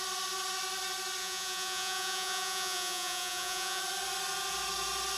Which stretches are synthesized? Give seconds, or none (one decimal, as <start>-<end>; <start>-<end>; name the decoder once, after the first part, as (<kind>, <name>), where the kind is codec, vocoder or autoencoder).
1.2-3.8 (vocoder, Vocos)